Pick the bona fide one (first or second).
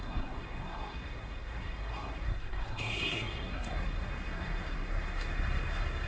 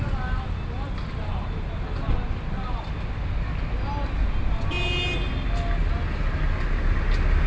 second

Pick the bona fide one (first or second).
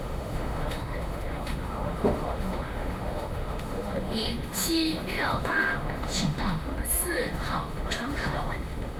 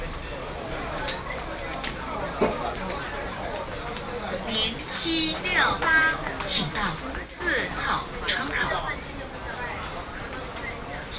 second